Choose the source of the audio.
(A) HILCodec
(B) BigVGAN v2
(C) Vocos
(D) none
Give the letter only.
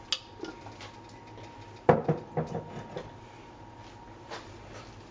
D